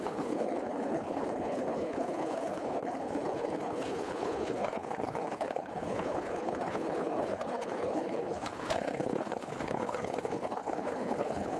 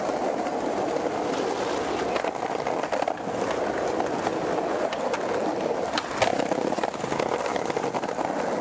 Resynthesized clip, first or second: first